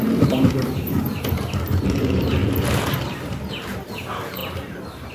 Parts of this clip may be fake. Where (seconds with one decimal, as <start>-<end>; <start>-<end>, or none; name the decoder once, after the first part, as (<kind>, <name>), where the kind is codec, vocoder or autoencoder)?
0.0-2.4 (vocoder, BigVGAN v2); 3.5-5.1